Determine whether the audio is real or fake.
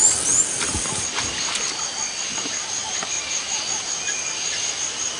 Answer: real